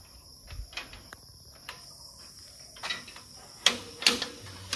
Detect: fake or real real